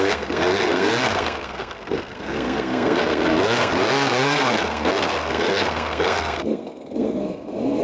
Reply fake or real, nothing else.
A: fake